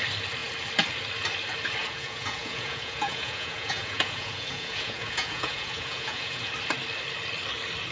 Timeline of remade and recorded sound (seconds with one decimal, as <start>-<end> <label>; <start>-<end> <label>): 0.0-1.8 recorded; 1.8-6.5 remade; 6.5-7.9 recorded